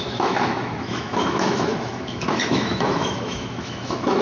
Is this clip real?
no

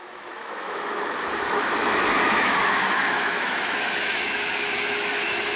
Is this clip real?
no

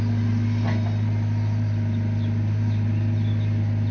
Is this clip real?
yes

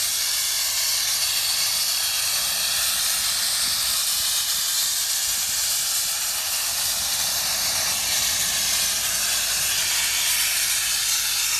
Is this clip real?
no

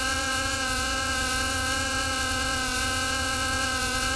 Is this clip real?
no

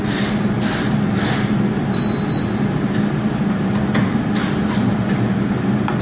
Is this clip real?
yes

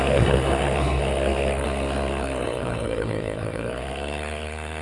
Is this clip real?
no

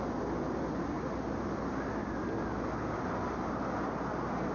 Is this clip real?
yes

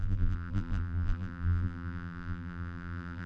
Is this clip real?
no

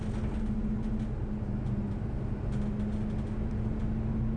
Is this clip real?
yes